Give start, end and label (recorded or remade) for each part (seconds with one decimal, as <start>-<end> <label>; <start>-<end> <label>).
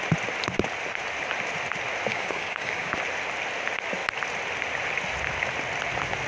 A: 0.0-2.1 recorded; 2.1-2.9 remade; 2.9-6.3 recorded